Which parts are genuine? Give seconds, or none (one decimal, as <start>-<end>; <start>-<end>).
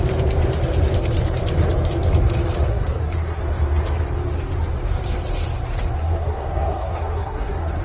0.0-2.7; 3.4-6.0